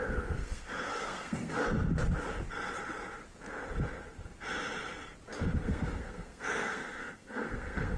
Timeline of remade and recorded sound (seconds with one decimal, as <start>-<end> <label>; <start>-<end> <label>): 0.0-1.6 remade; 1.6-5.6 recorded; 5.6-8.0 remade

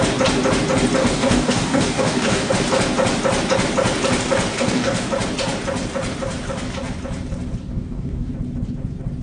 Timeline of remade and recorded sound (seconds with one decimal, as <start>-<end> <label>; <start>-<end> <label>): 0.0-1.0 recorded; 1.0-2.5 remade; 2.5-4.5 recorded; 4.5-5.1 remade; 5.1-7.7 recorded; 7.7-8.3 remade; 8.3-9.2 recorded

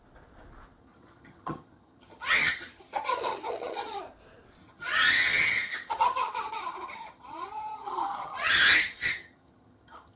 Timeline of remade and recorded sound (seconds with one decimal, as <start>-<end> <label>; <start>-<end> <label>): 0.0-0.8 recorded; 0.8-4.0 remade; 4.0-4.6 recorded; 4.6-10.2 remade

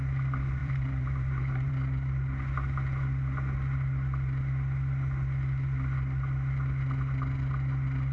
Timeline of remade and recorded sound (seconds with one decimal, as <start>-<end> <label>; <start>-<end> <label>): 0.0-0.6 recorded; 0.6-1.7 remade; 1.7-8.1 recorded